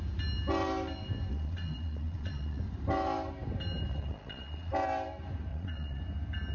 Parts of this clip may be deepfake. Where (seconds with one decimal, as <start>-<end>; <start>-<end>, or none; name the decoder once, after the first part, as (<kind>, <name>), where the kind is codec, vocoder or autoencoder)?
1.3-2.6 (vocoder, Vocos); 3.9-4.7; 5.5-6.0

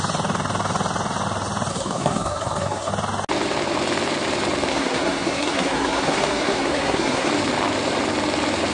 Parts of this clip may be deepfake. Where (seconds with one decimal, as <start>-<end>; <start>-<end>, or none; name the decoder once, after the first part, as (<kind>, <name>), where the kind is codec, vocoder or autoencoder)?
1.7-2.9 (codec, SNAC); 4.7-7.3

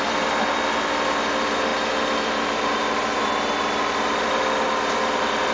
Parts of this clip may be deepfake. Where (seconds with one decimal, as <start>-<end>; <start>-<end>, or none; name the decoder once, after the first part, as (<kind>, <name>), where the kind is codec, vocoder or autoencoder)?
none

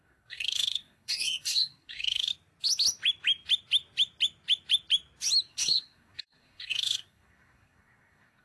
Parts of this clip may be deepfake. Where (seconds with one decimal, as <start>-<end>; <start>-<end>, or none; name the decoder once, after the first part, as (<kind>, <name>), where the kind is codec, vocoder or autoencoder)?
0.0-2.3 (codec, SNAC); 5.5-8.4